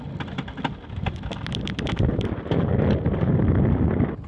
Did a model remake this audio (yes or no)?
no